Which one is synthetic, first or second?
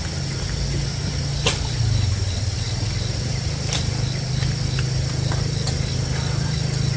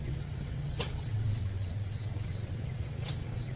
second